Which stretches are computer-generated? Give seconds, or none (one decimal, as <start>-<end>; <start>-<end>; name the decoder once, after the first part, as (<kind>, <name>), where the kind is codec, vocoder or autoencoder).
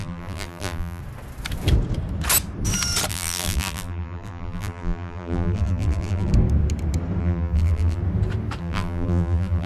0.0-1.0 (vocoder, BigVGAN v2); 3.1-6.3; 7.2-8.0; 8.6-9.7